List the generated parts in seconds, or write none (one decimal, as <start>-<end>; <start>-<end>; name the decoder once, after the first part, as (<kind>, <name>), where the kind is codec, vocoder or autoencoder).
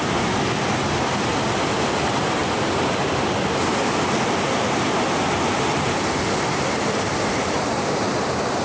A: none